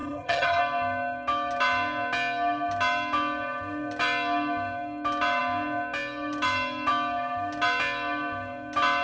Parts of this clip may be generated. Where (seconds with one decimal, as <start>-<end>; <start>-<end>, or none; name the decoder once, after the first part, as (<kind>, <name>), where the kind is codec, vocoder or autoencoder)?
0.0-0.6 (vocoder, HiFi-GAN)